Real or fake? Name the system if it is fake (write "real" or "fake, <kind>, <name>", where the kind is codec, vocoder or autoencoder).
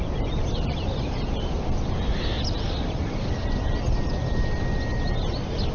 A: real